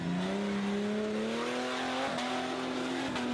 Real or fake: real